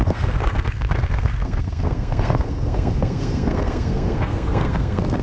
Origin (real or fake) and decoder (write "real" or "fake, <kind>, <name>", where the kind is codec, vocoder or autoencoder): fake, codec, SNAC